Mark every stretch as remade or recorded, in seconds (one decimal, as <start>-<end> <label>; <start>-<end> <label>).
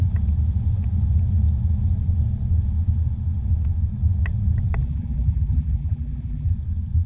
0.0-4.8 recorded; 4.8-6.5 remade; 6.5-7.1 recorded